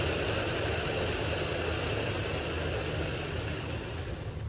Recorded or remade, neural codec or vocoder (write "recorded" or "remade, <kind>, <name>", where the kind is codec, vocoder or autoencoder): recorded